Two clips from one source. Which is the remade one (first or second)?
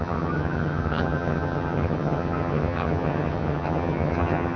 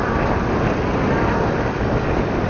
first